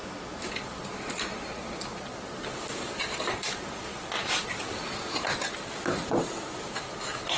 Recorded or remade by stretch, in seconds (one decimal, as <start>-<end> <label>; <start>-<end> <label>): 0.0-0.5 remade; 0.5-7.4 recorded